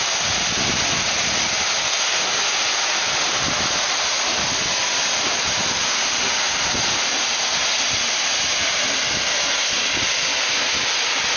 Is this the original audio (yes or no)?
yes